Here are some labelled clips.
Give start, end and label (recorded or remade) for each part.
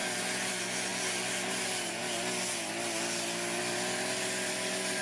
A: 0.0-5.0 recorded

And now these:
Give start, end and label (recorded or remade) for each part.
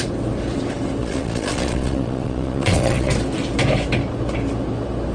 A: 0.0-1.0 recorded; 1.0-3.1 remade; 3.1-5.1 recorded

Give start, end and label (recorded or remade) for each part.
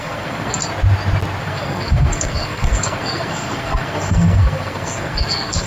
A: 0.0-0.6 remade; 0.6-1.4 recorded; 1.4-5.7 remade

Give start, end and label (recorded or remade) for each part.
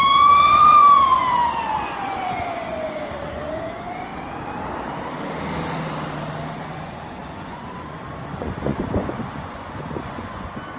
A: 0.0-4.1 remade; 4.1-6.5 recorded; 6.5-10.8 remade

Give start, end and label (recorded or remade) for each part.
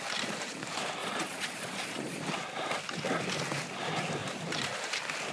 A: 0.0-1.0 recorded; 1.0-2.2 remade; 2.2-5.3 recorded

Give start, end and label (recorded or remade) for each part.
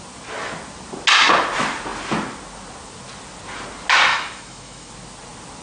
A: 0.0-4.1 recorded; 4.1-4.9 remade; 4.9-5.6 recorded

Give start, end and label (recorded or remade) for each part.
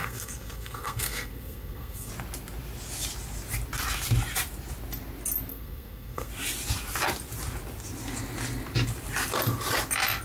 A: 0.0-2.1 remade; 2.1-5.5 recorded; 5.5-6.3 remade; 6.3-10.2 recorded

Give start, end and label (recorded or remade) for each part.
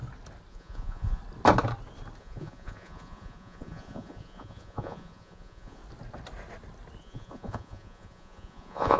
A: 0.0-0.5 recorded; 0.5-1.2 remade; 1.2-2.2 recorded; 2.2-5.8 remade; 5.8-7.0 recorded; 7.0-9.0 remade